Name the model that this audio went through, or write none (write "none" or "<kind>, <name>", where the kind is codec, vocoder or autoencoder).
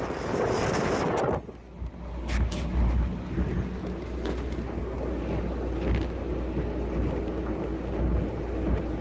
none